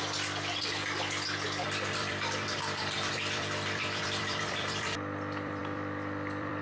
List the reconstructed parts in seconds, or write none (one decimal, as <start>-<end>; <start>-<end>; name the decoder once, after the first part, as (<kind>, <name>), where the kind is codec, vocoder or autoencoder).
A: 0.0-0.8 (vocoder, BigVGAN v2); 1.9-6.6